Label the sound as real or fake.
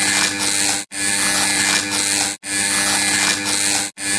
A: real